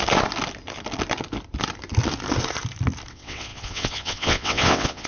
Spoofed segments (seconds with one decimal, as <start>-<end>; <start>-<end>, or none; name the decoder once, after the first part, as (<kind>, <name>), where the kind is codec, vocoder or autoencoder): 3.1-5.1 (vocoder, WaveNeXt)